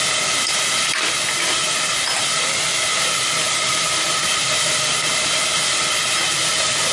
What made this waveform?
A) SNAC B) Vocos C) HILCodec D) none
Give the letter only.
D